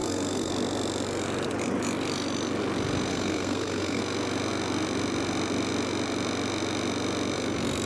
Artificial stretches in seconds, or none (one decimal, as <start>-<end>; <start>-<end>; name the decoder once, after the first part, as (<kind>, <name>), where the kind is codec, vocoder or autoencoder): 0.0-0.5 (codec, SNAC); 3.1-4.0